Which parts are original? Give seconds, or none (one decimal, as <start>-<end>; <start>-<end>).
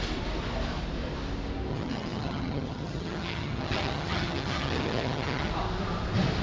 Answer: 0.0-1.7; 5.5-6.4